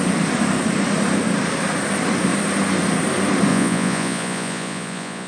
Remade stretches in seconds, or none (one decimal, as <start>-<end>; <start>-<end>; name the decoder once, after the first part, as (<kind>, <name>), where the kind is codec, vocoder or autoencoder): 3.5-5.3 (vocoder, Vocos)